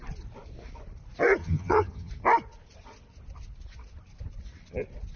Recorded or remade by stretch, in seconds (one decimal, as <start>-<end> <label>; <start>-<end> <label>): 0.0-1.4 recorded; 1.4-2.1 remade; 2.1-5.2 recorded